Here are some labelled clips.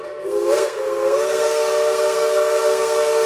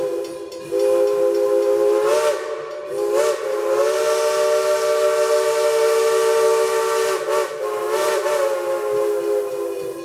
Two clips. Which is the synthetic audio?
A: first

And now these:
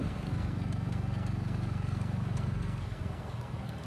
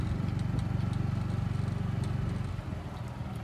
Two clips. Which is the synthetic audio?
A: first